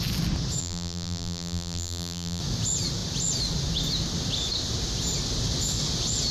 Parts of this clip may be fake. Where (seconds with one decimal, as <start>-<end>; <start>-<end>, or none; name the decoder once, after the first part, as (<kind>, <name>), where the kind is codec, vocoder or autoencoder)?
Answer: 0.6-2.4 (vocoder, BigVGAN v2)